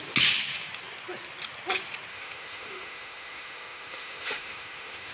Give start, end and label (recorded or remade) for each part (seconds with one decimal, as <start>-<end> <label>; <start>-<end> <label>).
0.0-2.1 recorded; 2.1-5.1 remade